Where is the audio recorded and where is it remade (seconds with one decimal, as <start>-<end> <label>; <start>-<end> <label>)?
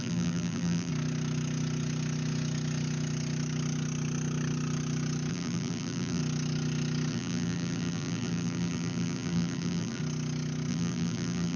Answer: 0.0-0.9 remade; 0.9-5.3 recorded; 5.3-6.2 remade; 6.2-7.1 recorded; 7.1-10.0 remade; 10.0-10.7 recorded; 10.7-11.6 remade